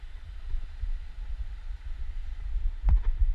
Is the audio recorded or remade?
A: recorded